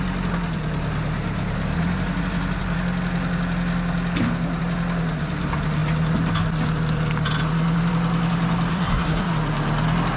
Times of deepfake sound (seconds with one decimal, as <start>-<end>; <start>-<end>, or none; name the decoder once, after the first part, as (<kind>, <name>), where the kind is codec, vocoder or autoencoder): 8.7-9.3 (codec, SNAC)